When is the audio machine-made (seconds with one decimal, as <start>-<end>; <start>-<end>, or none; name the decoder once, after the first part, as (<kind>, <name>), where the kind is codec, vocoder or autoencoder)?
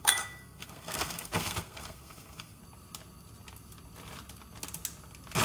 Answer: 0.0-2.6 (codec, SNAC)